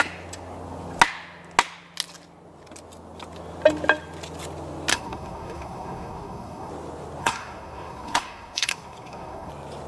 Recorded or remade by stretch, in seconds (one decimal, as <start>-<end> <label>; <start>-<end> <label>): 0.0-4.9 recorded; 4.9-6.7 remade; 6.7-7.2 recorded; 7.2-9.5 remade; 9.5-9.9 recorded